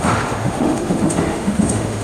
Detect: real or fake fake